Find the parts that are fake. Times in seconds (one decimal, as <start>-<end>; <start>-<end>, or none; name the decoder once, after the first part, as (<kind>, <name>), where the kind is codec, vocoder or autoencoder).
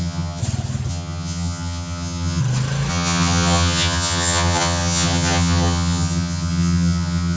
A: 0.0-0.4 (vocoder, HiFi-GAN); 0.9-2.4; 2.9-7.4